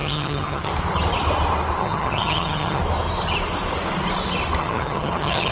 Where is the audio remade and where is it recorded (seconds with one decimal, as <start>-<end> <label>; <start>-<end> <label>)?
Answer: 0.0-0.7 remade; 0.7-1.8 recorded; 1.8-2.8 remade; 2.8-4.6 recorded; 4.6-5.5 remade